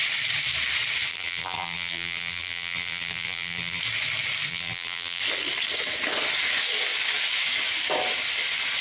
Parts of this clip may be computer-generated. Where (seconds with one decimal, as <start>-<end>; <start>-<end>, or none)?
1.1-3.8; 4.5-5.2